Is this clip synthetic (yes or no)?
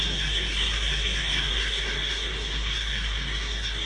yes